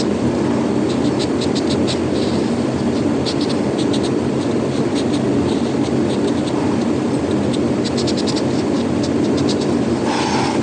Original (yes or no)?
yes